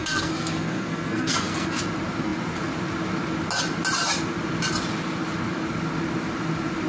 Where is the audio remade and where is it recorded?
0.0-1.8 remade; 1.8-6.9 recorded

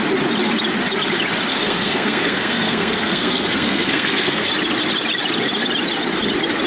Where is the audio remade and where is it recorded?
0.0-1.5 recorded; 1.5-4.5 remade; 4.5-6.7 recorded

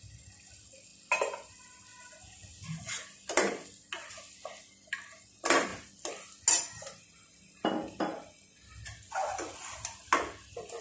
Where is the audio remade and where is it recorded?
0.0-10.8 recorded